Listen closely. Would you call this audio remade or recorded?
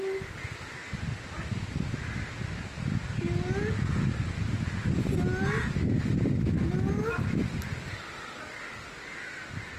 recorded